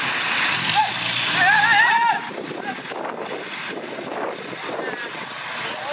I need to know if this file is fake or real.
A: real